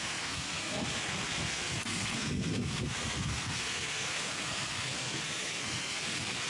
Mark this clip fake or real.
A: fake